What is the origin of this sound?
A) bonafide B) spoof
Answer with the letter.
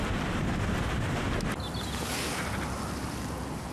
A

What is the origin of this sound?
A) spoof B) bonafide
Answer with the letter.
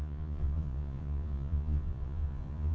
A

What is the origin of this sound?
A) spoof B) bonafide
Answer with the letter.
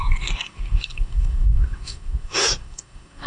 A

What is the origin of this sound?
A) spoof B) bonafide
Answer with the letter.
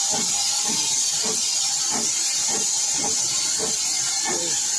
B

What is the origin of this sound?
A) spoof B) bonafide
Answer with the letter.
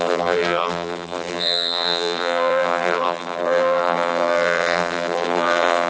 A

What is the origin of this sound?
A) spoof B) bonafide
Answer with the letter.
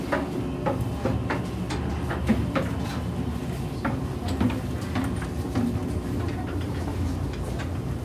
B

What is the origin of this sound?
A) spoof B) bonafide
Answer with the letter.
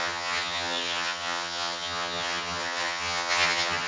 A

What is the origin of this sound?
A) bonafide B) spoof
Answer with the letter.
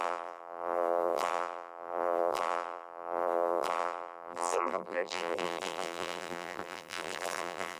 B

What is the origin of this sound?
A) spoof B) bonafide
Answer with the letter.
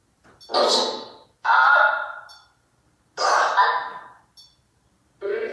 B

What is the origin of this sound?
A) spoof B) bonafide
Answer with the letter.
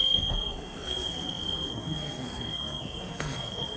A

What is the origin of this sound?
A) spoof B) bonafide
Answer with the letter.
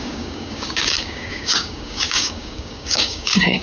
A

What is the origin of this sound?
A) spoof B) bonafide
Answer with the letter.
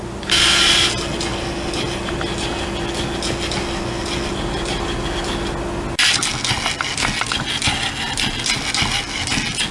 B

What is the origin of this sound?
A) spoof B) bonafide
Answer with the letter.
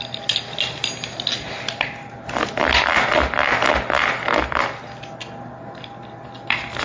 B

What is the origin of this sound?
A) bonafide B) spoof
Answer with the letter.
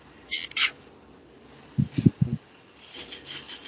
A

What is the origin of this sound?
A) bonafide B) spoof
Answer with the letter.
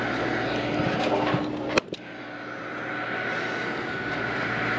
A